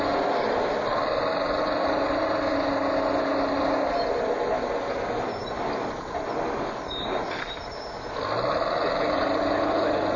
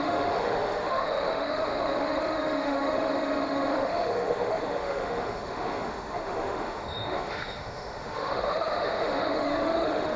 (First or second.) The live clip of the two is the first